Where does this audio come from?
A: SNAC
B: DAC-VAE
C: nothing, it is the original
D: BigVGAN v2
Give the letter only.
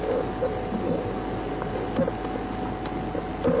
C